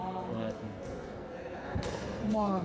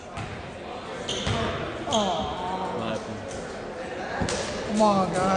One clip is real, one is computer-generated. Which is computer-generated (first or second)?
first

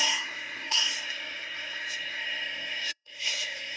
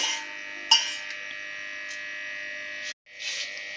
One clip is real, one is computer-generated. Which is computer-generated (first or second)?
first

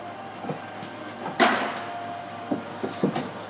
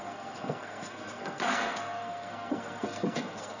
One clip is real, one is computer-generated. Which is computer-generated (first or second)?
second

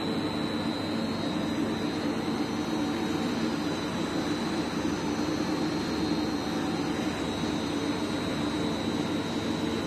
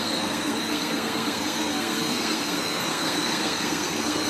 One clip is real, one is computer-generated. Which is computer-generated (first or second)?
second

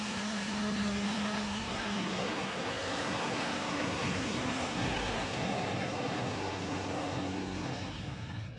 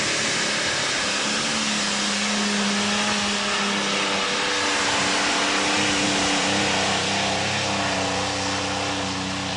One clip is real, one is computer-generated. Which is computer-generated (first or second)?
first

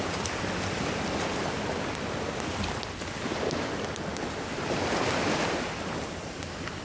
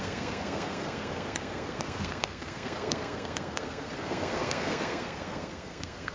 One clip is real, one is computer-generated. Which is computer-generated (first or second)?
second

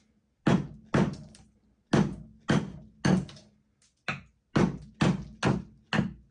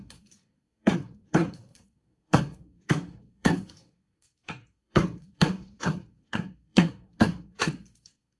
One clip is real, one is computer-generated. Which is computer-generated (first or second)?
second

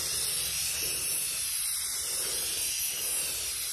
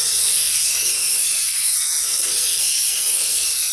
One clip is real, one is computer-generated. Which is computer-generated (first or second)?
second